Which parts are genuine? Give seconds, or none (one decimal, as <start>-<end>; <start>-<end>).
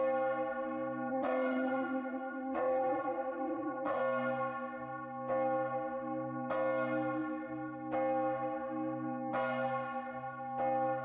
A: 0.0-1.1; 4.0-11.0